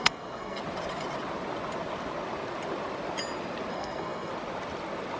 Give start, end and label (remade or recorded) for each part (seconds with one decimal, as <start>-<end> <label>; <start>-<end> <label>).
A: 0.0-0.6 remade; 0.6-3.7 recorded; 3.7-4.3 remade; 4.3-5.2 recorded